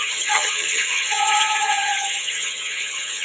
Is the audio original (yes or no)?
no